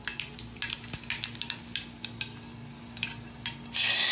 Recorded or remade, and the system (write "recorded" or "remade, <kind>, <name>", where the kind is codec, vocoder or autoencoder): recorded